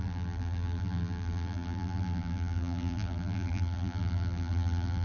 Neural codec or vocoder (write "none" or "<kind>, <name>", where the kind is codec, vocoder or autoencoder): vocoder, BigVGAN v2